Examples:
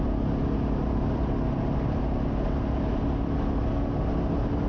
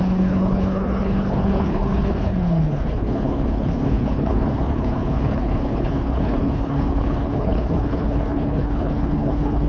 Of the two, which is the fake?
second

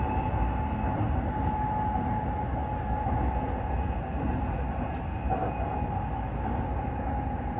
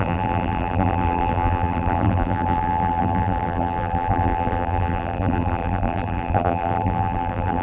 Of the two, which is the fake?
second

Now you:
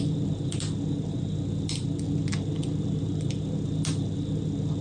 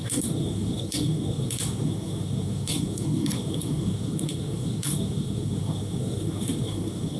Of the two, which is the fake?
second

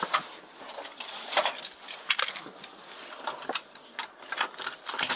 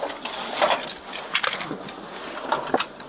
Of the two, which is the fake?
first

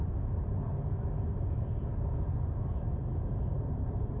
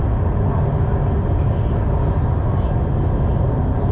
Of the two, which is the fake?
first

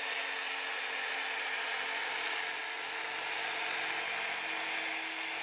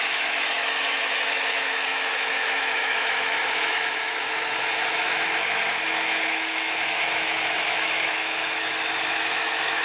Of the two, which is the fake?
second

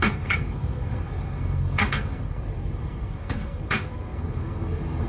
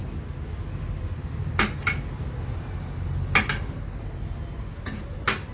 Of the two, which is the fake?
first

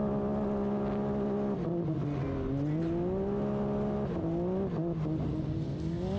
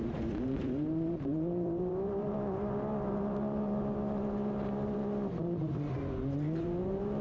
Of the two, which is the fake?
second